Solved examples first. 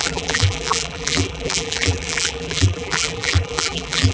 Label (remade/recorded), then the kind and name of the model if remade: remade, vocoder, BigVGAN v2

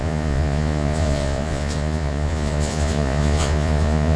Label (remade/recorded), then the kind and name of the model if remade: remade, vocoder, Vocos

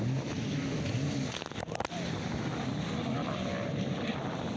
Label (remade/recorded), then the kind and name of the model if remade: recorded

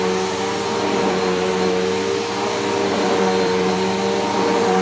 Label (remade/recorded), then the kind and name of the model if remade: recorded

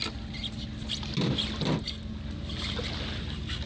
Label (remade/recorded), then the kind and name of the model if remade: recorded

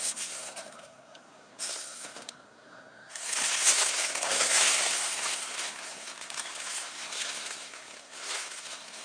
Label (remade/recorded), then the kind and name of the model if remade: remade, codec, SNAC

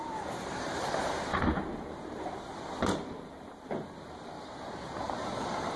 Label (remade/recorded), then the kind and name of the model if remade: remade, vocoder, BigVGAN v2